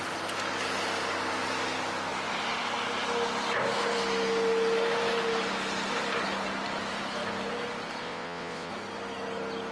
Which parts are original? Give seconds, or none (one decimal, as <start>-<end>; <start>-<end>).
0.0-8.0; 8.7-9.7